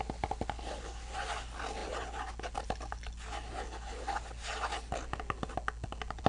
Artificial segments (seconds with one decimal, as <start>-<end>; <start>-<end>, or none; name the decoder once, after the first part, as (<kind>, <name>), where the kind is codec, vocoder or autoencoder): none